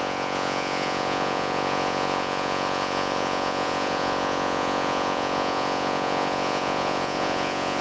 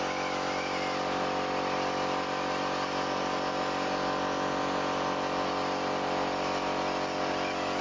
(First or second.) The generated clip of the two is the first